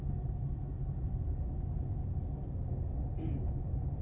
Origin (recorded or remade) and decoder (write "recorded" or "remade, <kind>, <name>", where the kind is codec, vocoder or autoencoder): recorded